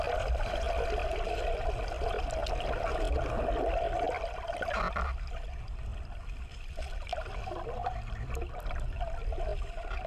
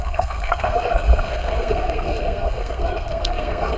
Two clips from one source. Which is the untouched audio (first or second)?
first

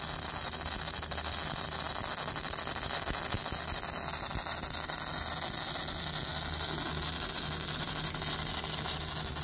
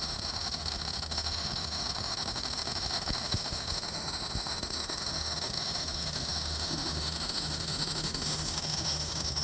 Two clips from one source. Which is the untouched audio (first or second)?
first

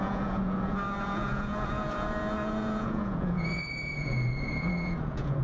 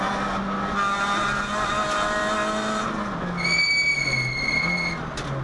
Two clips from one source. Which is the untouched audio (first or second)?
second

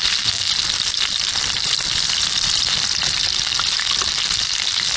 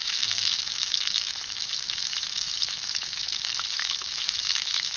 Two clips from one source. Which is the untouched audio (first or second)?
first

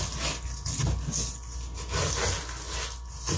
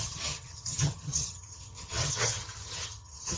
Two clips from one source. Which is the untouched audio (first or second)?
first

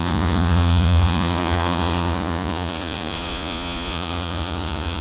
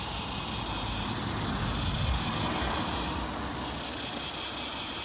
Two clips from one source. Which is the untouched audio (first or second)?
second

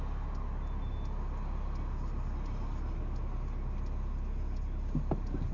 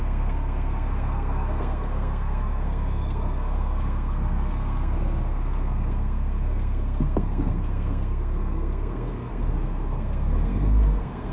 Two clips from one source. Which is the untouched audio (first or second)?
first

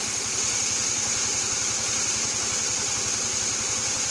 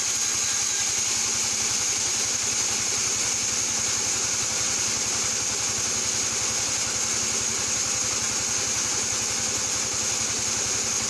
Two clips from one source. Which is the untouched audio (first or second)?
second